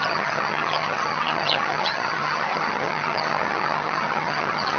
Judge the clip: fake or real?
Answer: fake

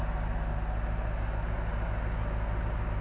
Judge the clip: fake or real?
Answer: real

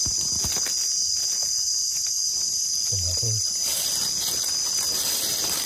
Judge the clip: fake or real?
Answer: real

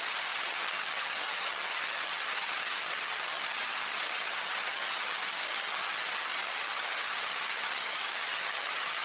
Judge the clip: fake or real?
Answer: fake